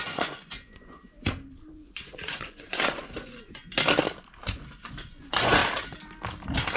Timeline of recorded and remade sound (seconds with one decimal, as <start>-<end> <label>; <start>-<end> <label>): 0.0-1.0 remade; 1.0-1.7 recorded; 1.7-3.6 remade; 3.6-4.5 recorded; 4.5-5.6 remade; 5.6-6.8 recorded